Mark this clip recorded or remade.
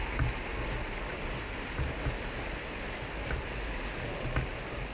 recorded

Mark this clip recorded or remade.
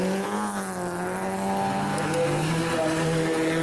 recorded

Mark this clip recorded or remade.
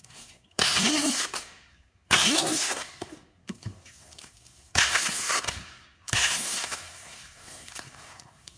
remade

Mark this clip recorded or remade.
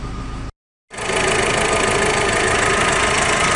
recorded